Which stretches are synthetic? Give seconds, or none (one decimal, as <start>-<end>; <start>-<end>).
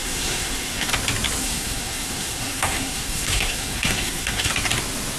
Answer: 0.0-0.9; 1.4-4.5